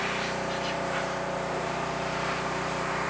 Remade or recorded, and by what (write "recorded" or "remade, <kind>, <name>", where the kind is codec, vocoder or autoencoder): remade, vocoder, BigVGAN v2